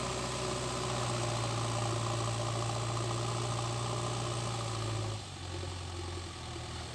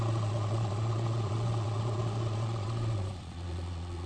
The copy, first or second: second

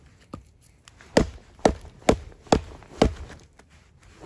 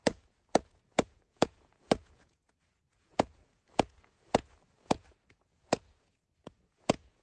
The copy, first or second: second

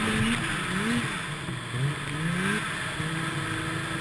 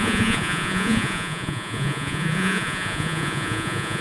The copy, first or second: second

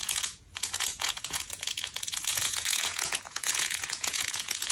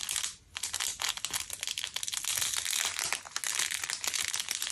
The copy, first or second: first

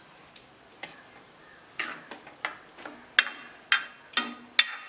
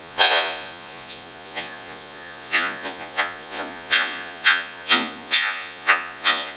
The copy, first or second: second